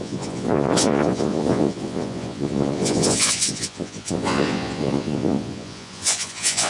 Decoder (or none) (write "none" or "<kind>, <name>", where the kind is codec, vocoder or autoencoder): vocoder, Vocos